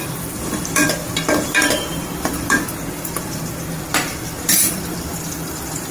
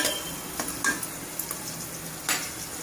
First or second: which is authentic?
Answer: second